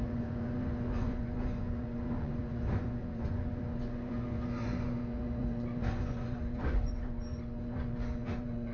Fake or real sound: fake